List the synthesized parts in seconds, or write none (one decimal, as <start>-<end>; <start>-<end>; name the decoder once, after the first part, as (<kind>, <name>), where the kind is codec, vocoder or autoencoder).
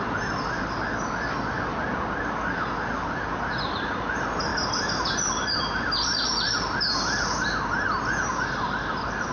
none